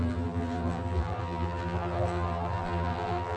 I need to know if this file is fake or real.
fake